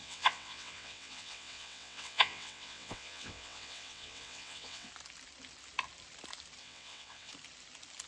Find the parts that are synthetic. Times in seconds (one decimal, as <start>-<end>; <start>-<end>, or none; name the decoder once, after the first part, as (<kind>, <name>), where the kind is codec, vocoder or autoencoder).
0.0-4.9 (vocoder, WaveNeXt); 6.6-7.3